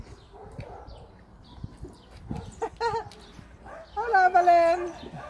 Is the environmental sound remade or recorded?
recorded